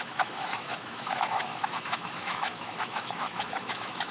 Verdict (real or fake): fake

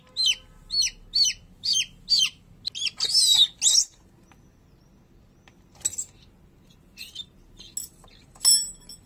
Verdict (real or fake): real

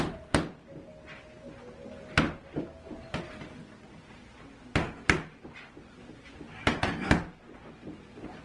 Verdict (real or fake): real